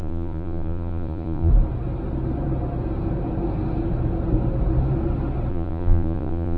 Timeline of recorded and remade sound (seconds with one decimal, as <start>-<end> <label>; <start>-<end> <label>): 0.0-1.5 remade; 1.5-5.5 recorded; 5.5-6.6 remade